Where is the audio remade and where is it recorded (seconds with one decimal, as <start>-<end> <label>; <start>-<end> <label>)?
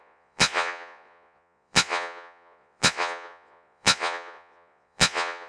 0.0-5.5 remade